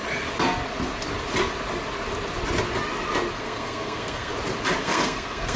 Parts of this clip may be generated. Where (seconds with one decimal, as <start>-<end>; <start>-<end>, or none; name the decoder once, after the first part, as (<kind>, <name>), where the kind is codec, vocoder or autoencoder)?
3.4-4.3 (codec, SNAC); 4.8-5.6

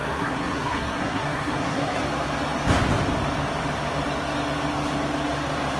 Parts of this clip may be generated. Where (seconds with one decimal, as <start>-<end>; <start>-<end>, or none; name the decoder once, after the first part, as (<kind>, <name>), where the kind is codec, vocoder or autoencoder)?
0.0-2.0 (codec, SNAC)

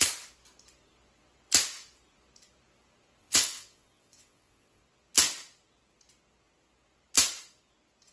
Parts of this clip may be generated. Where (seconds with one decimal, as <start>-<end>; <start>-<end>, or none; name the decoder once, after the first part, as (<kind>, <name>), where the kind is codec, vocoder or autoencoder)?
3.2-4.8 (vocoder, WaveNeXt)

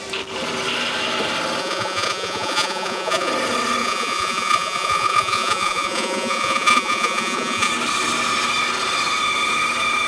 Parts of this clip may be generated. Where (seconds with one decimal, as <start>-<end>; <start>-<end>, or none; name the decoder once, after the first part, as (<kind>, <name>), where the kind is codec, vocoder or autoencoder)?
1.6-3.3 (vocoder, Vocos); 3.8-7.7

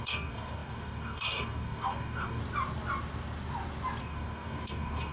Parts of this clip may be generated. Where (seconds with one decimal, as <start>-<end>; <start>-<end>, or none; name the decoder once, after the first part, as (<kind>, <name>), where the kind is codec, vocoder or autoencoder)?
0.0-2.4 (codec, DAC); 4.0-5.1

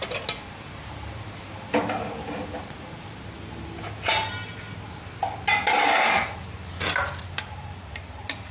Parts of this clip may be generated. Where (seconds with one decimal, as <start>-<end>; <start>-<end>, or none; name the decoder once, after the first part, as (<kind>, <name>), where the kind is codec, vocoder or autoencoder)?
none

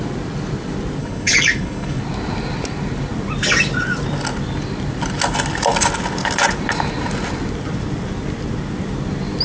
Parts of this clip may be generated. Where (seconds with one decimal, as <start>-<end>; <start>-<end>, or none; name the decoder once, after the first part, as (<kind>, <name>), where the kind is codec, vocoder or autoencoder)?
1.0-2.0 (codec, HILCodec)